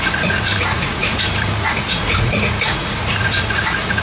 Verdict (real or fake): fake